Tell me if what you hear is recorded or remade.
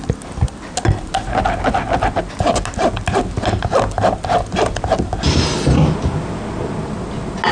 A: recorded